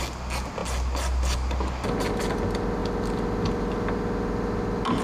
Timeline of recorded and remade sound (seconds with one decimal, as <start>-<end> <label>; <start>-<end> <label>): 0.0-5.0 recorded